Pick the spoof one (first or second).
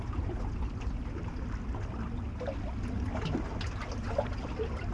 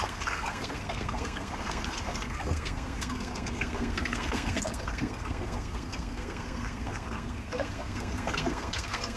second